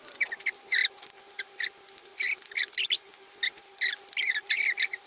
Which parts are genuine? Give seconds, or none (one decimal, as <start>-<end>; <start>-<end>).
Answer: 0.0-5.1